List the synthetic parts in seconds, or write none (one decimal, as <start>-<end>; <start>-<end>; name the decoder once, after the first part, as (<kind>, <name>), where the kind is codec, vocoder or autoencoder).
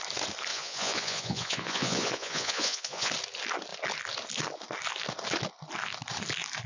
0.5-3.1 (vocoder, Vocos)